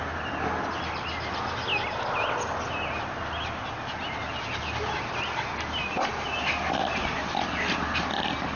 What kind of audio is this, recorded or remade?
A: recorded